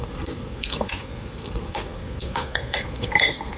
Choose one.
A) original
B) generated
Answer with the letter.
B